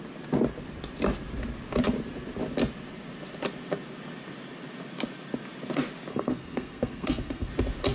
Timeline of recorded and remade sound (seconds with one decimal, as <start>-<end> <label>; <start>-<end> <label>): 0.0-6.1 recorded; 6.1-7.5 remade; 7.5-7.9 recorded